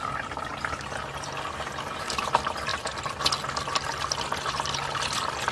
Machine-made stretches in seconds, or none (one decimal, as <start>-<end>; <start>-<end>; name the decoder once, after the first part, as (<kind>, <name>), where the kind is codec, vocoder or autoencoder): none